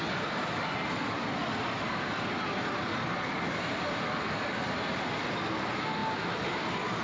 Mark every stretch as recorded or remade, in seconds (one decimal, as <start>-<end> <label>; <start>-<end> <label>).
0.0-7.0 recorded